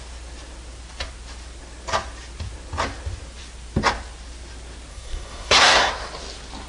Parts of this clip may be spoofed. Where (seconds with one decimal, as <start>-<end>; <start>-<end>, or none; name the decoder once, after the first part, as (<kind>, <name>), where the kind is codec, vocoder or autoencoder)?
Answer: 4.9-5.9 (codec, SNAC)